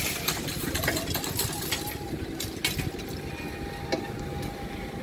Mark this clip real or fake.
real